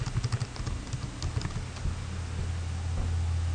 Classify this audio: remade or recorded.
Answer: recorded